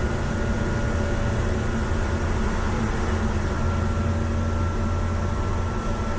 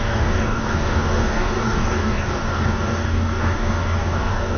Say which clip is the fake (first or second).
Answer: second